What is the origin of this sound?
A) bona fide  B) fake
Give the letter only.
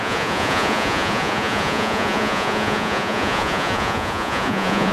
B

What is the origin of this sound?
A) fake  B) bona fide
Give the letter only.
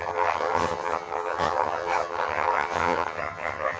A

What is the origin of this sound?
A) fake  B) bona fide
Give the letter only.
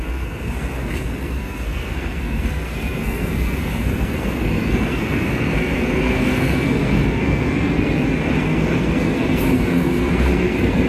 A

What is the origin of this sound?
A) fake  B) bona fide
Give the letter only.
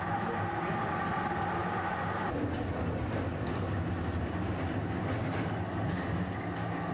B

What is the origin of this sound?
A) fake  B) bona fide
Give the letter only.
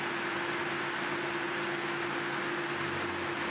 B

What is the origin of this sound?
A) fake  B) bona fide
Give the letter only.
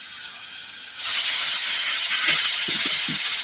A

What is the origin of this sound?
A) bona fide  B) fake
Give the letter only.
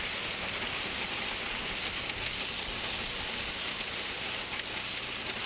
A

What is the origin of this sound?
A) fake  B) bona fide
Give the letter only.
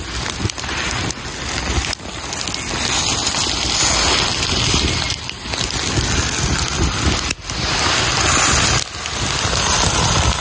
B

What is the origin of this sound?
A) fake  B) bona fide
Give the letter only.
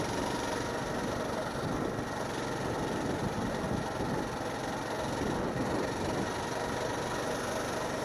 B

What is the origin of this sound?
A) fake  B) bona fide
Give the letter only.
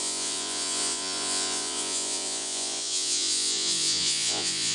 A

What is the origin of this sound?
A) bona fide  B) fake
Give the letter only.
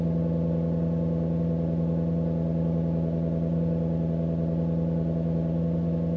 A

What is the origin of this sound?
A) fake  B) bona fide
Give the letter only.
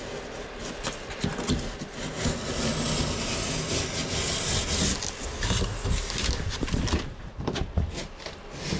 B